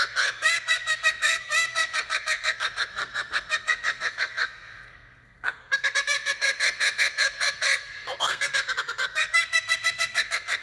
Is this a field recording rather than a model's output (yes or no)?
no